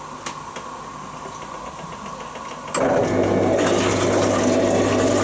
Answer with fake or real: real